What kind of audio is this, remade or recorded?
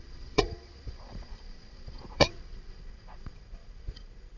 remade